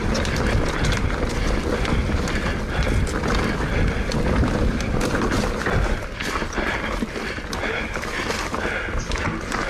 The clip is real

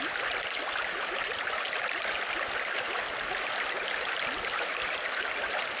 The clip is real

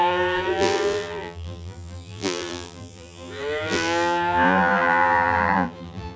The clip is fake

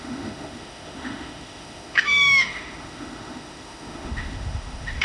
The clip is fake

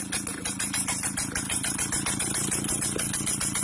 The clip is real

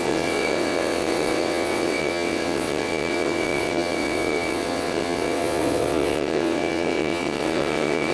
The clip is fake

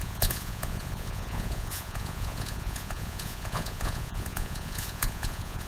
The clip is fake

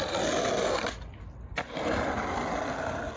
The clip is real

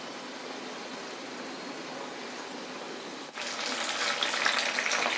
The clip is real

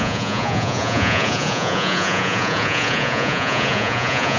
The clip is fake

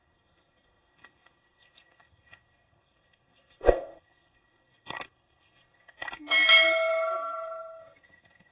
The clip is fake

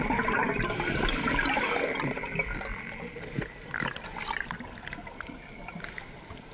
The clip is real